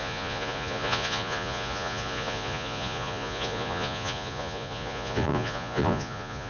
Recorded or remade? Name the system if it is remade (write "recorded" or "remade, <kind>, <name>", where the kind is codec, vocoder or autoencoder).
remade, vocoder, Vocos